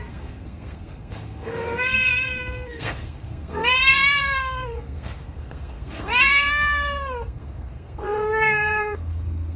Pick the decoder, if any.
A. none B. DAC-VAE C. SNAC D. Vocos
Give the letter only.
C